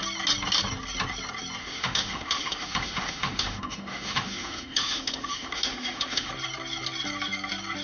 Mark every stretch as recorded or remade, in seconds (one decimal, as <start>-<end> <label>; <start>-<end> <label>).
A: 0.0-1.6 recorded; 1.6-6.3 remade; 6.3-7.8 recorded